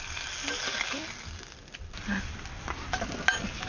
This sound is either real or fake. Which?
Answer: real